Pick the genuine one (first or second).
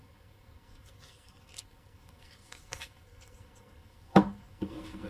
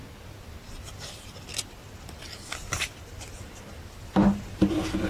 second